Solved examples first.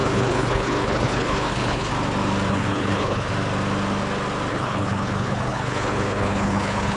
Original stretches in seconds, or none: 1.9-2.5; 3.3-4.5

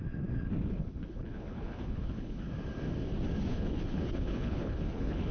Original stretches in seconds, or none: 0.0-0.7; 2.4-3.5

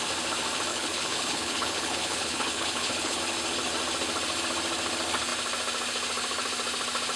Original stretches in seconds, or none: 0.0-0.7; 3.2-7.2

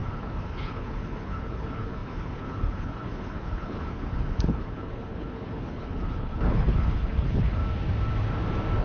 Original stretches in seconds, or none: 7.6-8.8

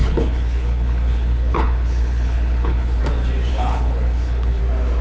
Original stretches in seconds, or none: 3.0-3.5; 4.6-5.0

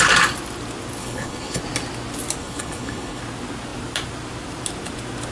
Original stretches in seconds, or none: 0.0-1.0; 1.6-2.4; 3.2-5.3

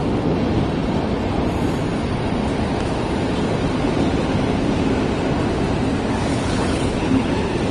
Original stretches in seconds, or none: 0.0-6.3; 7.3-7.7